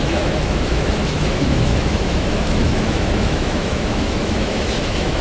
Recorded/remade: remade